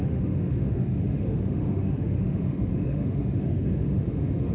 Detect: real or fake fake